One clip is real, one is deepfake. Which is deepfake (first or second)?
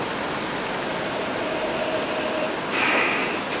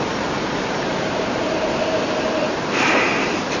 second